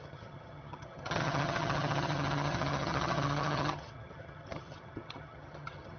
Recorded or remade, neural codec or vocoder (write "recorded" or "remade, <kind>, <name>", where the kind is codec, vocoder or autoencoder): remade, vocoder, HiFi-GAN